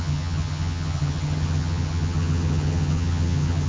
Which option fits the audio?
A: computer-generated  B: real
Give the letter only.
A